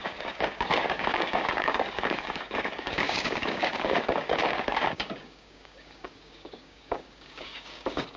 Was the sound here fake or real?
fake